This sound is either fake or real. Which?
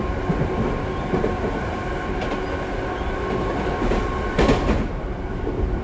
real